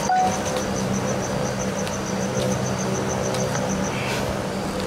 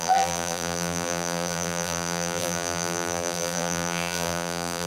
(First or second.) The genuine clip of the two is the first